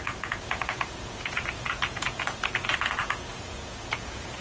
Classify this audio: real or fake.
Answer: fake